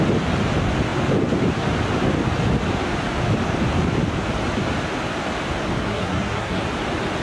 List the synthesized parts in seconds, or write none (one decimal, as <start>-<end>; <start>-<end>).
5.8-6.6